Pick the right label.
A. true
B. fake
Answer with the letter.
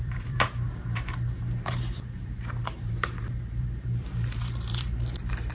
B